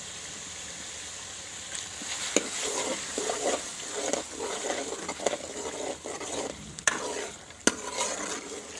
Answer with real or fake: real